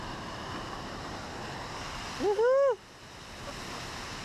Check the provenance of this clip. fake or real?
real